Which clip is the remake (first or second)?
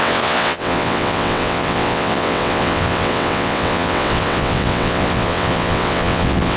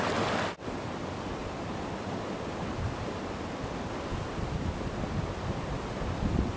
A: first